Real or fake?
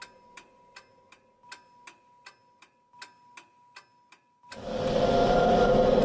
real